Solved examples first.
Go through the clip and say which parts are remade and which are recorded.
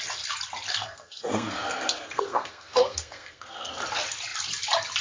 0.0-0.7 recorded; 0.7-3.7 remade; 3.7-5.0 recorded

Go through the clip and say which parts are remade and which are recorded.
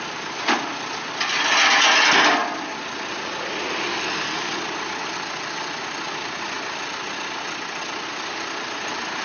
0.0-9.2 recorded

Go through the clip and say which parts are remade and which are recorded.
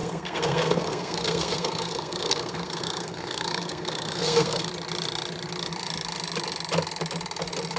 0.0-4.7 remade; 4.7-7.8 recorded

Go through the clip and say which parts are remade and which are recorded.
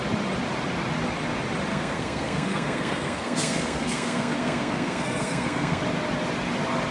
0.0-1.7 recorded; 1.7-5.8 remade; 5.8-6.9 recorded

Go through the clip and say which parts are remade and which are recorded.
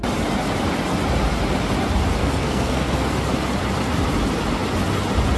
0.0-2.2 recorded; 2.2-3.1 remade; 3.1-5.4 recorded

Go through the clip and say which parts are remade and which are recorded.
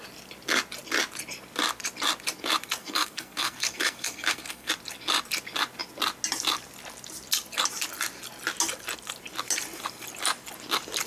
0.0-2.8 recorded; 2.8-4.7 remade; 4.7-11.1 recorded